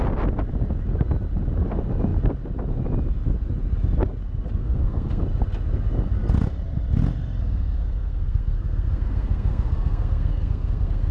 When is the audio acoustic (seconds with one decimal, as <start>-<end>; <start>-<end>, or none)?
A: 0.0-4.6; 5.2-7.4